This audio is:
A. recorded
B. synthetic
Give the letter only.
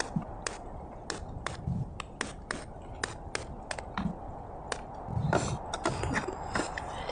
A